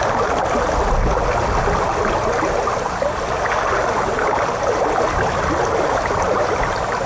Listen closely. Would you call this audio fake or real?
real